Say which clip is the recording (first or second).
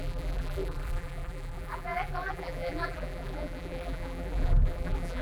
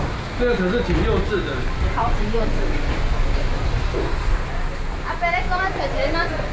second